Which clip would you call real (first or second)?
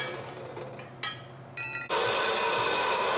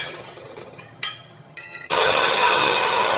first